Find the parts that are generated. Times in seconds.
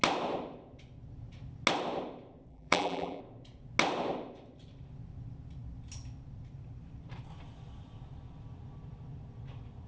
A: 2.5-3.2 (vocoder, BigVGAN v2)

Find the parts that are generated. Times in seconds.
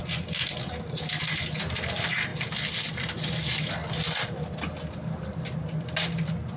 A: 2.3-3.7 (vocoder, BigVGAN v2)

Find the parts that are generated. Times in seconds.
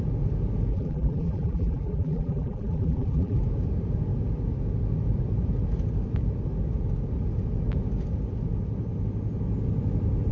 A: 0.7-3.4 (vocoder, BigVGAN v2)